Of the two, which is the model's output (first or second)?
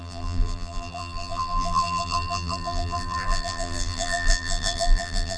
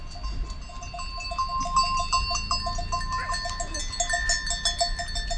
first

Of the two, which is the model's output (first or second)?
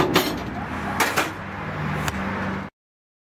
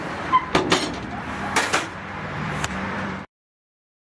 second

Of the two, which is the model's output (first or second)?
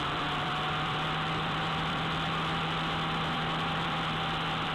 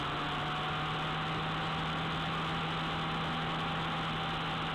first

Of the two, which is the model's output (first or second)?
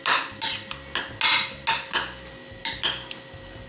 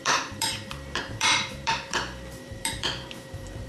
second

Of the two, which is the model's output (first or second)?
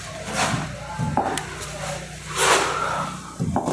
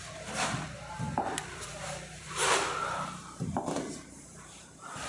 second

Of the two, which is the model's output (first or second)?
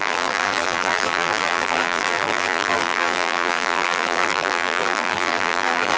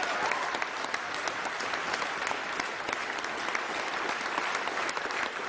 first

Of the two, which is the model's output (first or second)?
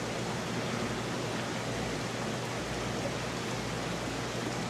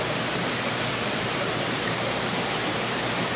second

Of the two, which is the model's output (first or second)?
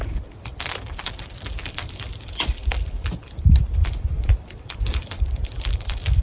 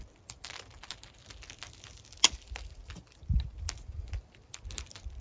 first